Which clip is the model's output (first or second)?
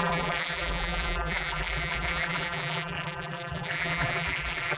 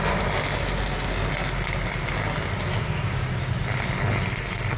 first